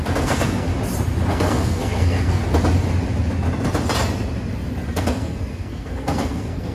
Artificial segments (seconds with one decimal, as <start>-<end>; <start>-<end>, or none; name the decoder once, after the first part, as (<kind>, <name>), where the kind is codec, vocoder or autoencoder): 0.0-0.7 (codec, SNAC); 1.3-2.4; 4.9-6.7